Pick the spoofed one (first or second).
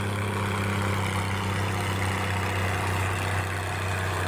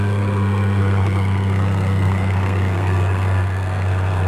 second